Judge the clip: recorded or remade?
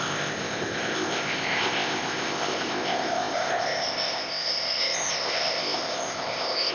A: remade